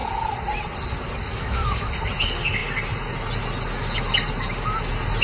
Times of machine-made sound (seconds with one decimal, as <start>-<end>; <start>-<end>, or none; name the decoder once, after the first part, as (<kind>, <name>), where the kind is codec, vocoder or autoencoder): 1.3-1.9 (autoencoder, DAC-VAE)